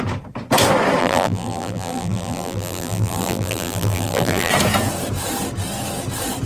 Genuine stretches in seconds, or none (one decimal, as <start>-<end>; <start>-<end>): 0.0-1.0; 4.5-6.5